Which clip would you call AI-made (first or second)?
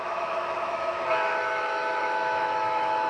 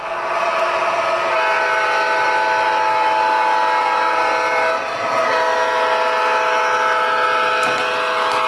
first